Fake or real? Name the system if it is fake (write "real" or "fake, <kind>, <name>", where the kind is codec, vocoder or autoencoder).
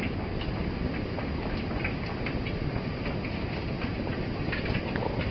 real